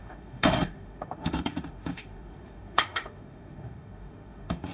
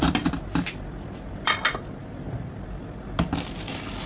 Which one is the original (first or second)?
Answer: second